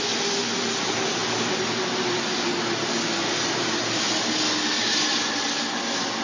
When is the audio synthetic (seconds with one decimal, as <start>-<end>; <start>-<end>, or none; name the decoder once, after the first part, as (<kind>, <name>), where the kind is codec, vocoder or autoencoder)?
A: none